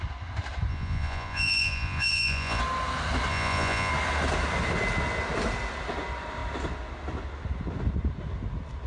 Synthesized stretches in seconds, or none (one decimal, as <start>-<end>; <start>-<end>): 0.7-2.6; 3.3-3.9